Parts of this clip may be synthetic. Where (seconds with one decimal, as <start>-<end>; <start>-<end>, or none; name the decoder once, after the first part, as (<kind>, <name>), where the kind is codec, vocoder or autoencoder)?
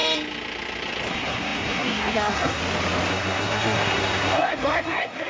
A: 1.1-2.6 (codec, SNAC); 3.1-5.3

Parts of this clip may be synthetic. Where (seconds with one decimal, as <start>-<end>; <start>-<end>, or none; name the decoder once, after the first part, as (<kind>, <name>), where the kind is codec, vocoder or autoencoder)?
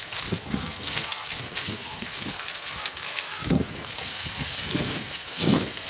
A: 0.0-5.9 (codec, SNAC)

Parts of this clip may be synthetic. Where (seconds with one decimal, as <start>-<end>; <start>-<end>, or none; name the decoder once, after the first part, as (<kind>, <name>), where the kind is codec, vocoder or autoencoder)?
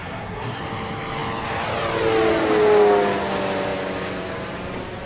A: 0.0-0.6 (codec, SNAC)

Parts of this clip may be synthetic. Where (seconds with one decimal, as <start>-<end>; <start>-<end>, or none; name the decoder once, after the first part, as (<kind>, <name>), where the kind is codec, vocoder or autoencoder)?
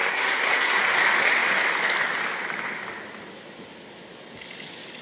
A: 0.0-0.8 (codec, SNAC)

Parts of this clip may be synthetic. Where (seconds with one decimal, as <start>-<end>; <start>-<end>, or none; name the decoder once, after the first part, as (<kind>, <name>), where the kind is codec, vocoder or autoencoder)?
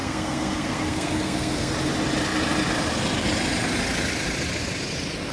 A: 0.0-1.7 (codec, SNAC)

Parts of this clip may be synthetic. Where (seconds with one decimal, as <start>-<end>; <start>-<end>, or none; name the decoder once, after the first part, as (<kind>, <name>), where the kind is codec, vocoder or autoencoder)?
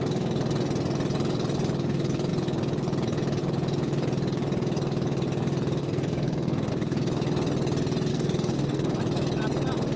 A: 5.8-6.7 (codec, SNAC); 8.1-9.0